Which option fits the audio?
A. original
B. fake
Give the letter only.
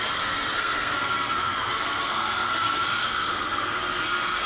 B